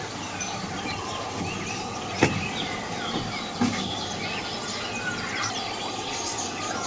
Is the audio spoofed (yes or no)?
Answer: no